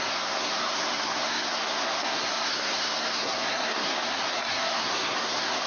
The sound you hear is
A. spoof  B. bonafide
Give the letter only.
A